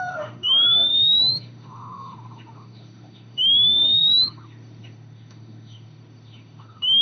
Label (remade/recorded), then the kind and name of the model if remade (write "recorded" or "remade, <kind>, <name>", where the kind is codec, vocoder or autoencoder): remade, autoencoder, DAC-VAE